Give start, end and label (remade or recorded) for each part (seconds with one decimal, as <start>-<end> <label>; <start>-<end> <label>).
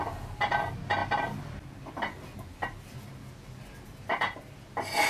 0.0-5.1 recorded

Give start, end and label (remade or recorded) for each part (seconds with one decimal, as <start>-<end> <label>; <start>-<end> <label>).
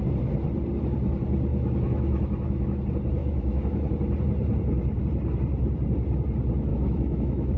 0.0-1.5 recorded; 1.5-2.8 remade; 2.8-3.2 recorded; 3.2-3.9 remade; 3.9-6.7 recorded; 6.7-7.6 remade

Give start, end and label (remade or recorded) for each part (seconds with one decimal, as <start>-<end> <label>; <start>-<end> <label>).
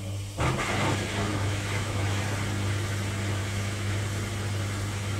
0.0-1.3 recorded; 1.3-2.2 remade; 2.2-3.4 recorded; 3.4-4.0 remade; 4.0-5.2 recorded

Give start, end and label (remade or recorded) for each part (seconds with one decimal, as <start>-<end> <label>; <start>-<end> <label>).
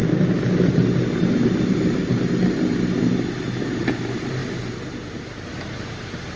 0.0-6.4 recorded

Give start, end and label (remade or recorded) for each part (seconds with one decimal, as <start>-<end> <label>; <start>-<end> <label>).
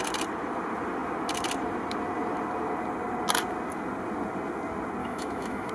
0.0-5.0 recorded; 5.0-5.7 remade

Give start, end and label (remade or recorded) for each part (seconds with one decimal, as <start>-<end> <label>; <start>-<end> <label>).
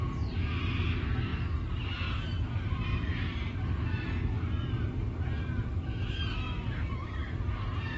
0.0-8.0 recorded